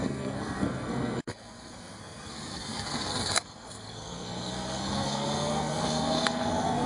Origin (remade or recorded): remade